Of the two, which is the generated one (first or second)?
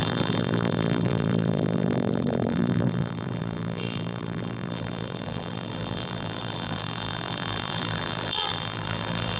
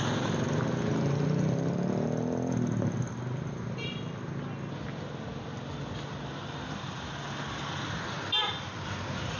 first